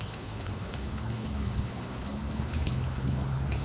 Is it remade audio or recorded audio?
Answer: remade